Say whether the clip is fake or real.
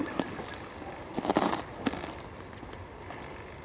real